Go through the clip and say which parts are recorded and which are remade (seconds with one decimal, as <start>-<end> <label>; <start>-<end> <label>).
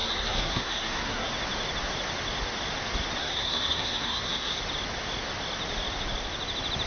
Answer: 0.0-1.3 remade; 1.3-3.2 recorded; 3.2-4.6 remade; 4.6-6.9 recorded